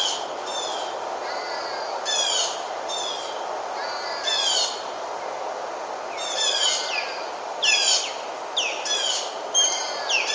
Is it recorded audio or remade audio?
recorded